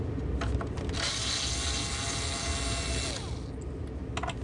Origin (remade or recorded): recorded